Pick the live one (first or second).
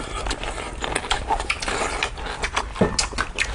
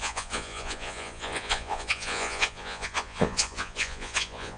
first